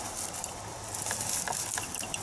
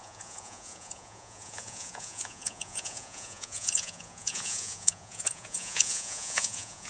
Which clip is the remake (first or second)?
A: second